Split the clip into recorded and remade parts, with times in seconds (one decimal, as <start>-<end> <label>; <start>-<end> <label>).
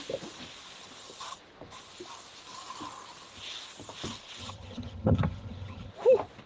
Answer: 0.0-4.4 recorded; 4.4-5.9 remade; 5.9-6.5 recorded